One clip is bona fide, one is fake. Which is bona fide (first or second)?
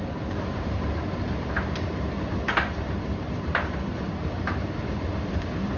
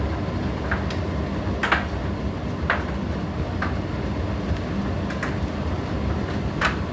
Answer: second